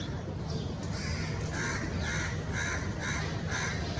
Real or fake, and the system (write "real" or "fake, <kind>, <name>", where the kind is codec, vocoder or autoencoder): real